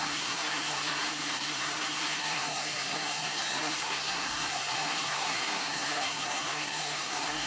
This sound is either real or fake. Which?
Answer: fake